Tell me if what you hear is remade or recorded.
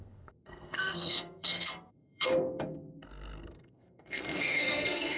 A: remade